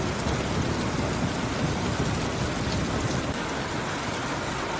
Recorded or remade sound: recorded